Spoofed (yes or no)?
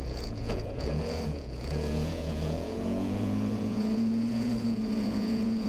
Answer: yes